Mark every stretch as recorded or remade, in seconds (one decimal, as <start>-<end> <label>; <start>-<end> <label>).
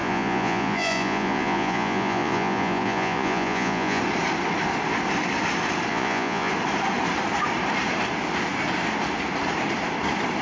0.0-4.0 remade; 4.0-5.9 recorded; 5.9-6.5 remade; 6.5-10.4 recorded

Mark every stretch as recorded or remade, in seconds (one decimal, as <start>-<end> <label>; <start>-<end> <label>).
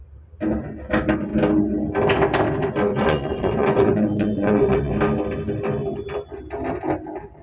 0.0-2.9 recorded; 2.9-4.9 remade; 4.9-7.4 recorded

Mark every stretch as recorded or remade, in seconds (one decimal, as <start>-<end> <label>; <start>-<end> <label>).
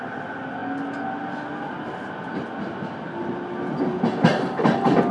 0.0-5.1 recorded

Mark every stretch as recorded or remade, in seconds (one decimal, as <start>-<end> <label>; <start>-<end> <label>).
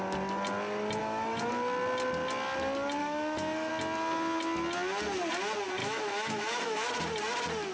0.0-1.0 recorded; 1.0-1.5 remade; 1.5-3.0 recorded; 3.0-3.7 remade; 3.7-5.8 recorded; 5.8-6.9 remade; 6.9-7.7 recorded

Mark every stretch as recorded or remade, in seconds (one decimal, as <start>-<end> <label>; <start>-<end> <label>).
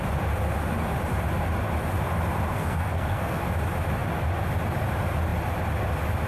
0.0-2.5 recorded; 2.5-3.4 remade; 3.4-6.3 recorded